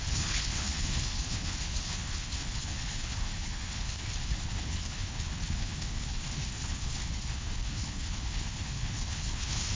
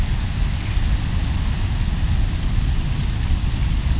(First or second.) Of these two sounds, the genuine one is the second